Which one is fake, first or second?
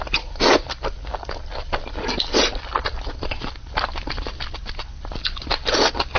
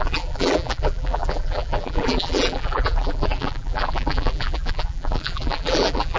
second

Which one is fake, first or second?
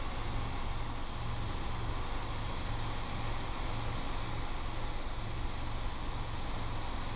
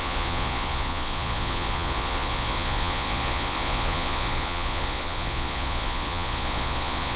second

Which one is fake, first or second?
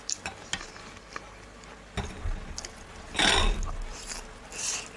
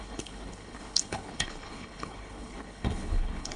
second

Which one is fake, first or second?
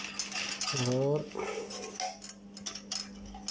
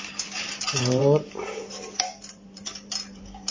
second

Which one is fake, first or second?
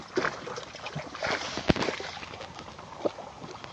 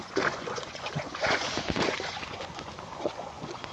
second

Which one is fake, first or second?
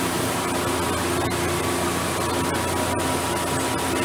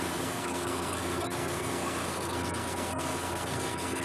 second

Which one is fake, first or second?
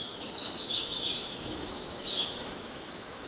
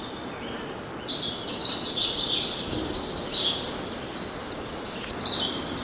first